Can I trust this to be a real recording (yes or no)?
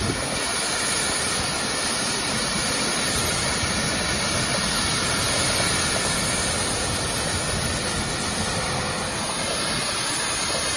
yes